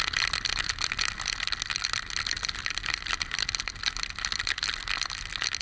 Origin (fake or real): real